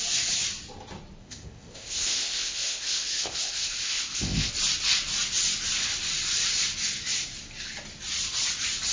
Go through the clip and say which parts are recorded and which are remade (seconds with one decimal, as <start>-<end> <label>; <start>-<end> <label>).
0.0-1.2 recorded; 1.2-4.5 remade; 4.5-8.9 recorded